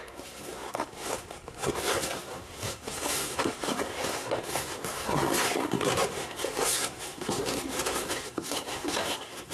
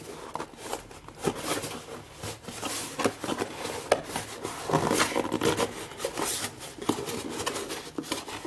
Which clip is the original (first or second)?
second